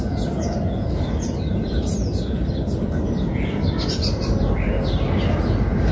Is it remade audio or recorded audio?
recorded